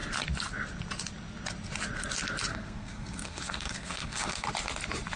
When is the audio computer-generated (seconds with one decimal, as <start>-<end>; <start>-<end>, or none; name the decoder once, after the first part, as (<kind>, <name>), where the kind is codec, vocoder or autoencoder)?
2.5-4.5 (codec, SNAC)

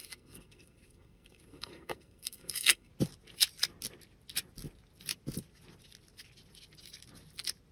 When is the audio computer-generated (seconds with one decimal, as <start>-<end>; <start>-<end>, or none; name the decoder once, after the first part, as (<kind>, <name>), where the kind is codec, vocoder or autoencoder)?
0.0-2.9 (codec, SNAC)

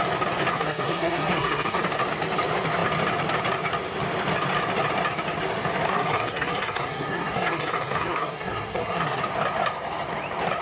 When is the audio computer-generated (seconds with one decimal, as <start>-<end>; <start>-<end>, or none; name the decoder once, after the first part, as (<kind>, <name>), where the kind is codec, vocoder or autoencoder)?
0.5-1.8 (codec, SNAC); 5.9-9.2

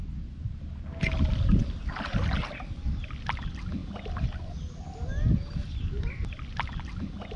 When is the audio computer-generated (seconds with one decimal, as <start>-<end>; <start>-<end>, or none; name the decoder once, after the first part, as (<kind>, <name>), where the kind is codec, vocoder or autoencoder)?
none

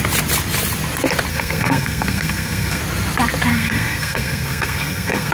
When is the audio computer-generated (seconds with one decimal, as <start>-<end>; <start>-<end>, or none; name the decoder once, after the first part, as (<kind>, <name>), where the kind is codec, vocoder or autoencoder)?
1.3-2.8 (codec, SNAC); 3.5-5.3

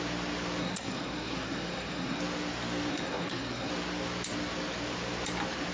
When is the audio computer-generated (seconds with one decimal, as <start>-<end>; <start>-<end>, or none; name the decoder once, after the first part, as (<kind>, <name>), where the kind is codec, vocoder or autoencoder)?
0.6-2.2 (codec, SNAC); 2.9-3.7

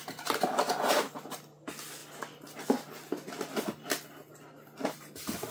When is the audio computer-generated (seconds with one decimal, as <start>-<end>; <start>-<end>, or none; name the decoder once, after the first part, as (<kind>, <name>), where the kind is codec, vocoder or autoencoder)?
none

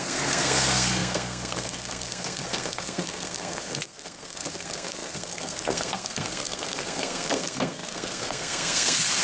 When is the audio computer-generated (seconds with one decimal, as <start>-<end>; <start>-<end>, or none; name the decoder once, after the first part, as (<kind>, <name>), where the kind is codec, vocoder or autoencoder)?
0.0-9.2 (codec, SNAC)